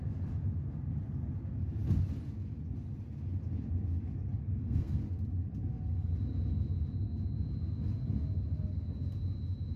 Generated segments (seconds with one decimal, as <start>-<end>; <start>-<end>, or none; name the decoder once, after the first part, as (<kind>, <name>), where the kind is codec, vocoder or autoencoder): 4.4-5.0 (codec, SNAC)